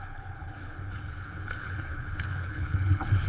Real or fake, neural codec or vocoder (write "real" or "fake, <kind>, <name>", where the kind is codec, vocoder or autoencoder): fake, codec, HILCodec